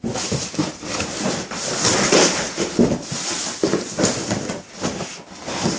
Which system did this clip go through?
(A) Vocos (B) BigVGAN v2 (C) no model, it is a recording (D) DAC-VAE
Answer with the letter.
C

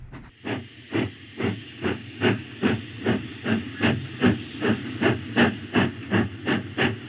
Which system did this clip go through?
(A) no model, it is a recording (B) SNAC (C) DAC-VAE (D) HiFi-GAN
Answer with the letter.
A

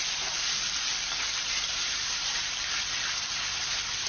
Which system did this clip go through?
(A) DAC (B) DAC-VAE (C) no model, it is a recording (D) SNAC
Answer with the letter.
C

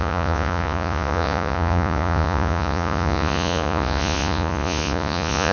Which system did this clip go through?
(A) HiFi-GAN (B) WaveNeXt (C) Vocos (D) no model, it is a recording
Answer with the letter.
C